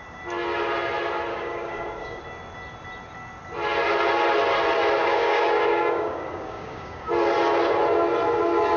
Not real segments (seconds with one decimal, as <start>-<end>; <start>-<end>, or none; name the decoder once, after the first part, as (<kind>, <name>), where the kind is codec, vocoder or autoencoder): 1.3-2.2 (codec, DAC); 5.0-7.1